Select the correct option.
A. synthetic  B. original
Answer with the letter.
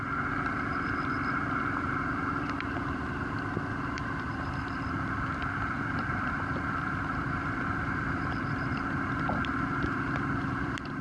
A